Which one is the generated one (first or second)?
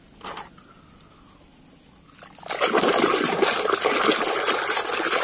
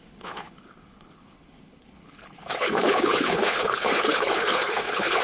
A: second